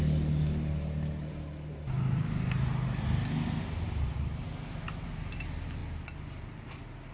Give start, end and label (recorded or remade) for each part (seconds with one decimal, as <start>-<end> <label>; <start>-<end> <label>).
0.0-7.1 recorded